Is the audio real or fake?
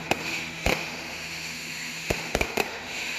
fake